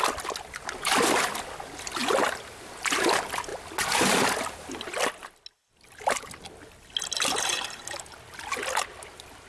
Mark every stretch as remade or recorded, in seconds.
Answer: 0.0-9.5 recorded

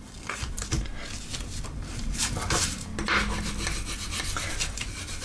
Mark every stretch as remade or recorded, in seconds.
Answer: 0.0-0.9 remade; 0.9-1.6 recorded; 1.6-2.9 remade; 2.9-4.5 recorded; 4.5-5.2 remade

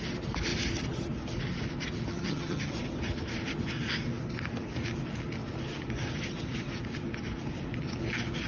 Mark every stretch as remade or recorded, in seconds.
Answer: 0.0-2.1 recorded; 2.1-2.7 remade; 2.7-8.5 recorded

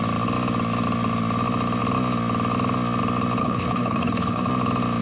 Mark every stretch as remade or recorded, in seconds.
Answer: 0.0-3.4 recorded; 3.4-4.5 remade; 4.5-5.0 recorded

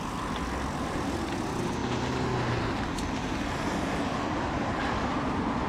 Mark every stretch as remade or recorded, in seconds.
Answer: 0.0-5.7 recorded